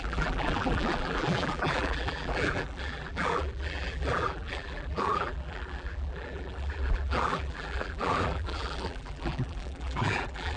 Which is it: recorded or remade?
remade